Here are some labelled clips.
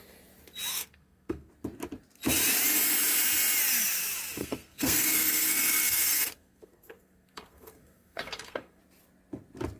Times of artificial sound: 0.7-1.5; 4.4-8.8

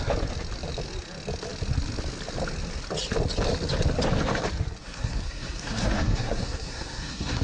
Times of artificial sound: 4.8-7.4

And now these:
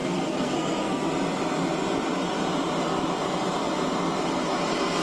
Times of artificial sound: 0.0-1.1

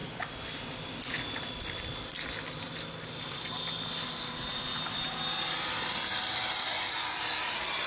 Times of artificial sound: none

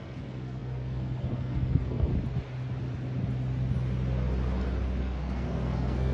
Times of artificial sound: 0.0-2.1; 5.0-6.1